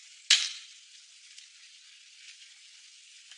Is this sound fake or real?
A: real